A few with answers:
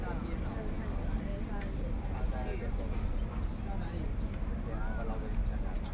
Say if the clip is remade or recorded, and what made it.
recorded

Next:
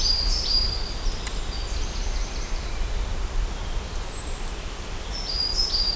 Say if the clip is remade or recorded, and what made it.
recorded